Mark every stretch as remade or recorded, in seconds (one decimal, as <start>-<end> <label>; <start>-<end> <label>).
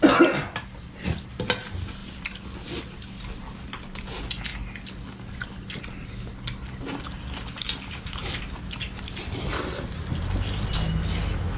0.0-11.6 recorded